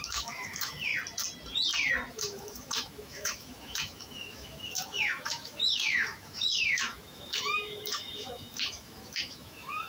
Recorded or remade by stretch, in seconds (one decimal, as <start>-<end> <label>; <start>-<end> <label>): 0.0-0.9 remade; 0.9-2.1 recorded; 2.1-9.9 remade